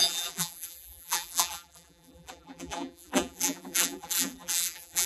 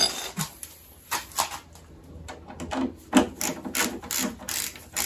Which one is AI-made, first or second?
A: first